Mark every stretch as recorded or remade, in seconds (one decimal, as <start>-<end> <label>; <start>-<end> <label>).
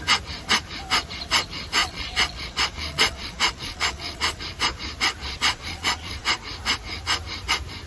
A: 0.0-1.8 recorded; 1.8-4.4 remade; 4.4-5.2 recorded; 5.2-6.3 remade; 6.3-7.9 recorded